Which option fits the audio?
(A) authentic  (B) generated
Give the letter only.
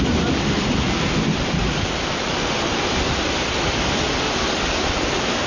A